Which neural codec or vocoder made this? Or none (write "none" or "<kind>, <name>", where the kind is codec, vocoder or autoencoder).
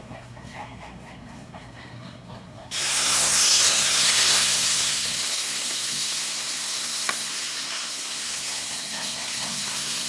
codec, SNAC